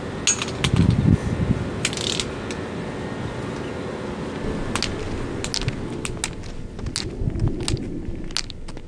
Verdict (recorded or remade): recorded